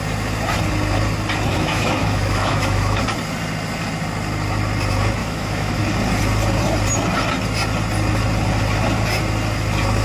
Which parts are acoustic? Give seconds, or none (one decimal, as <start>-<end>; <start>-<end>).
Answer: 0.0-1.5; 3.0-5.2; 5.8-10.0

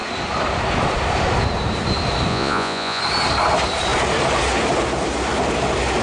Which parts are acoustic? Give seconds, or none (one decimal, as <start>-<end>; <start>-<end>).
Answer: 0.0-2.3; 3.0-6.0

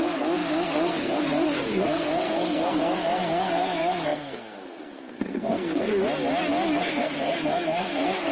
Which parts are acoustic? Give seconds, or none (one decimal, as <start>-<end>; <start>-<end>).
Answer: 5.9-6.8

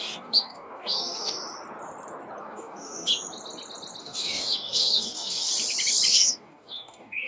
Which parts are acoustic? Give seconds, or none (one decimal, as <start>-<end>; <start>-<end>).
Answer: 1.4-2.4; 3.1-4.0; 5.5-6.1

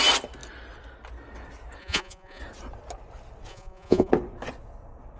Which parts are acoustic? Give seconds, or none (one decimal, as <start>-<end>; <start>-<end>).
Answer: 0.0-1.8; 2.4-3.5; 4.1-5.2

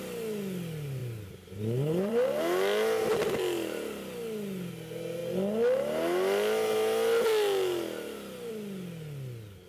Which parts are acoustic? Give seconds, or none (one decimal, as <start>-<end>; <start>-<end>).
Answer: 0.0-1.0; 2.4-9.7

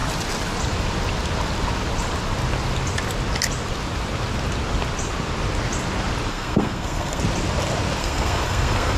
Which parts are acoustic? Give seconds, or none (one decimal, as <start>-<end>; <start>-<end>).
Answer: 0.0-6.3; 7.2-8.0